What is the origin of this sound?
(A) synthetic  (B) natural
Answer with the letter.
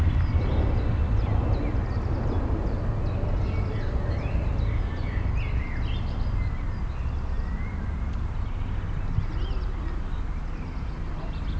B